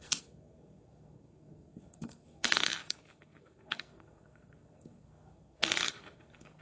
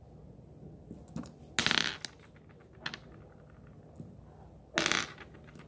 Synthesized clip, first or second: first